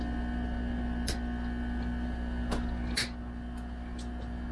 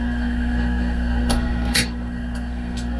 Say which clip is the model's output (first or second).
second